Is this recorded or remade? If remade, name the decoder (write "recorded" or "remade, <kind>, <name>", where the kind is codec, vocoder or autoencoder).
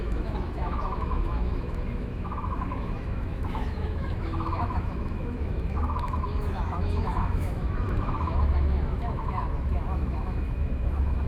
remade, autoencoder, DAC-VAE